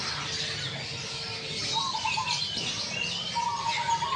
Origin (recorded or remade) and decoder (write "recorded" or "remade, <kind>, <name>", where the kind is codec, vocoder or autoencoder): recorded